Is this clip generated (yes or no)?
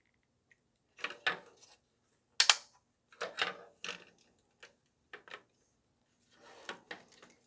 no